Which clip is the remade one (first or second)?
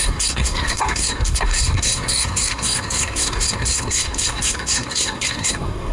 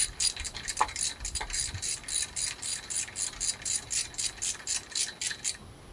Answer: first